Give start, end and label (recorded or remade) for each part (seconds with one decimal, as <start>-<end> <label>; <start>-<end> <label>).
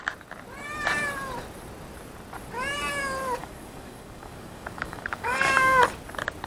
0.0-3.4 recorded; 3.4-5.8 remade; 5.8-6.5 recorded